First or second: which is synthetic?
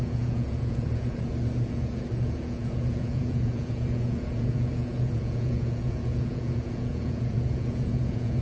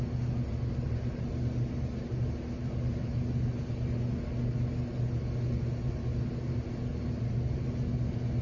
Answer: first